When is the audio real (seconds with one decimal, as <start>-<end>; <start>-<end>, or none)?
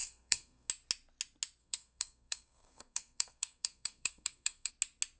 0.7-1.6; 4.7-5.2